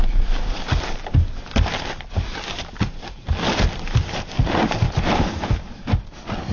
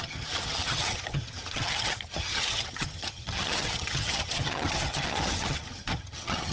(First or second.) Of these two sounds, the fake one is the second